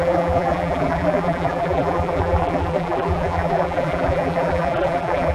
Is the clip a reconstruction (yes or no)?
yes